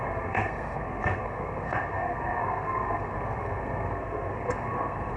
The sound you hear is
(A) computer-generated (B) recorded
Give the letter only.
A